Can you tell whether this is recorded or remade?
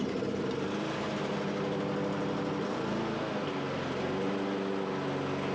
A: recorded